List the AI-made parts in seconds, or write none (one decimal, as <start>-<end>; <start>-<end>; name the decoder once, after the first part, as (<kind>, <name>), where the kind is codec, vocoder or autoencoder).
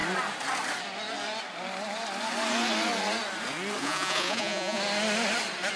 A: 3.8-4.8 (vocoder, Vocos)